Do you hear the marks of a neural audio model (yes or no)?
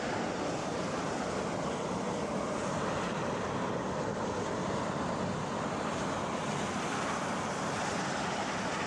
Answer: no